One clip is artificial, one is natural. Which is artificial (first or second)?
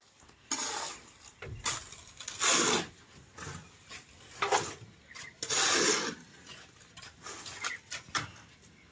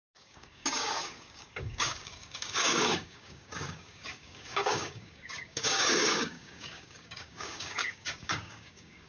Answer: second